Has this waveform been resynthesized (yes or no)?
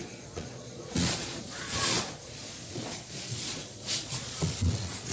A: yes